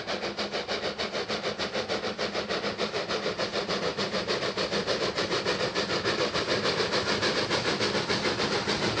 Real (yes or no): yes